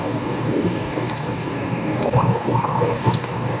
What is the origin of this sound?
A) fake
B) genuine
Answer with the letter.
A